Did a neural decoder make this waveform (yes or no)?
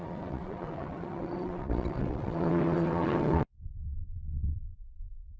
yes